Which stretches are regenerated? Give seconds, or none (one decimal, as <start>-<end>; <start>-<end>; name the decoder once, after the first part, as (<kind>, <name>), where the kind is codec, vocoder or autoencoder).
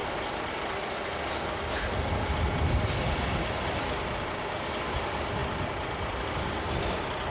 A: none